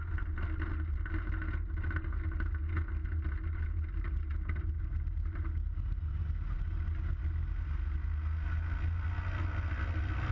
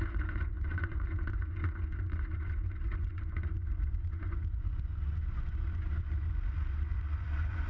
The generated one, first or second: second